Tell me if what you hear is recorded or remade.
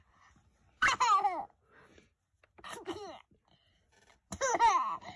recorded